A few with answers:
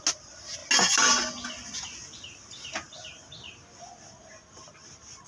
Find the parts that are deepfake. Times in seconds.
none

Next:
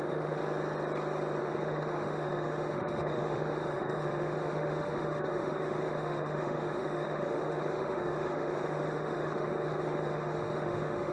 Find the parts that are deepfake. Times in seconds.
0.0-0.4 (autoencoder, DAC-VAE); 1.4-11.1

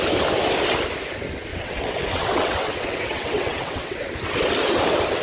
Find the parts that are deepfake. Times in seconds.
1.5-4.0 (vocoder, WaveNeXt)